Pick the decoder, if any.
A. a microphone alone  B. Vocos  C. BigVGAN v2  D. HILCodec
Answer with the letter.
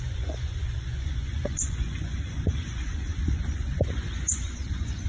B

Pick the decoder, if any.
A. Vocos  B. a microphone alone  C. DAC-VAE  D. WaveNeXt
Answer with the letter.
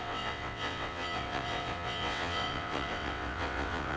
D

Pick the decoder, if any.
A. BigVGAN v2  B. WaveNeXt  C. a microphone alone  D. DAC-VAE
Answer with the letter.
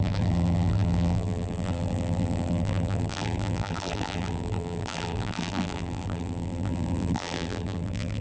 A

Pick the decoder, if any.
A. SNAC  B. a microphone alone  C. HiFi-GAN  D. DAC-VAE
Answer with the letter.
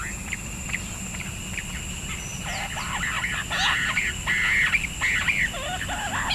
B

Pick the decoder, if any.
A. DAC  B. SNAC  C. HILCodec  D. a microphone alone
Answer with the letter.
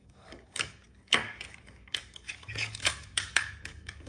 A